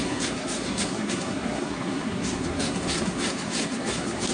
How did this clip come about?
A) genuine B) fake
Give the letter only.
B